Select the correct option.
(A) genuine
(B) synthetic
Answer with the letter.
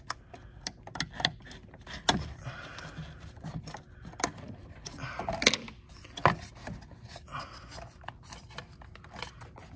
A